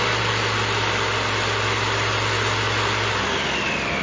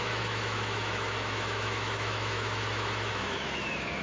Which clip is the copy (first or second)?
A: second